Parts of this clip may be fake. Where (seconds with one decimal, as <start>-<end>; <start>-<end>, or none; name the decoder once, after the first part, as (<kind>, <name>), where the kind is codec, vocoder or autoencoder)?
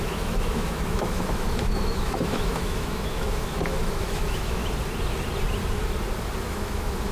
0.0-4.6 (autoencoder, DAC-VAE); 6.5-7.1